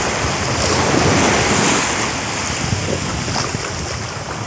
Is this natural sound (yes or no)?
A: yes